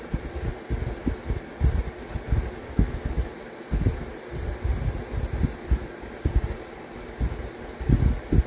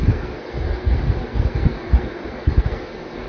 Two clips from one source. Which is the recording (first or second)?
first